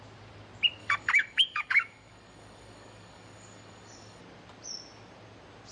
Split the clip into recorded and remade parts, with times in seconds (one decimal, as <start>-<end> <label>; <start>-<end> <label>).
0.0-0.8 recorded; 0.8-4.2 remade; 4.2-5.7 recorded